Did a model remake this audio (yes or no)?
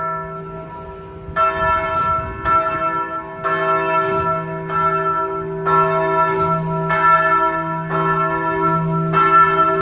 no